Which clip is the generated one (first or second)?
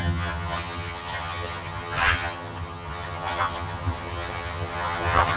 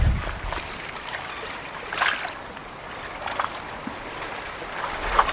first